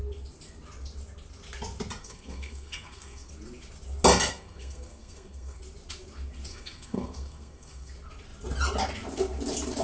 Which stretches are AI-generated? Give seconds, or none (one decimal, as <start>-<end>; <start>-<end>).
2.0-3.3; 4.3-5.6; 6.5-7.9